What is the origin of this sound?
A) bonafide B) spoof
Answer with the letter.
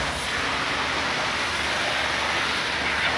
A